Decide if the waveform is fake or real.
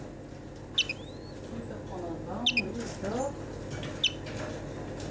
real